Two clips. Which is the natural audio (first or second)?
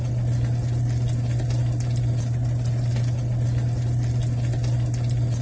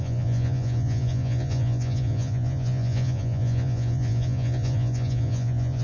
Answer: first